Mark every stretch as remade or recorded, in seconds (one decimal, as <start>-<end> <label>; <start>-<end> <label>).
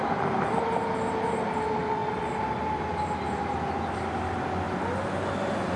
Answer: 0.0-5.8 recorded